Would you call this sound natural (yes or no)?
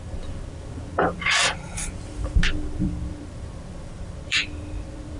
no